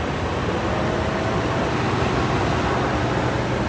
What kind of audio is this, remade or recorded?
recorded